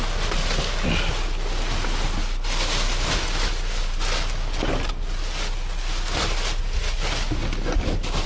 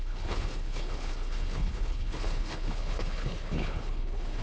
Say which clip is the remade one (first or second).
second